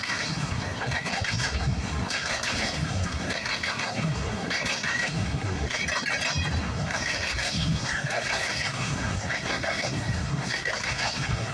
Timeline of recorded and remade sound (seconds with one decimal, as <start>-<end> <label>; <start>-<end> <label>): 0.0-5.8 remade; 5.8-6.6 recorded; 6.6-11.5 remade